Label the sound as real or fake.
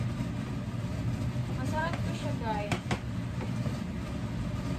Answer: real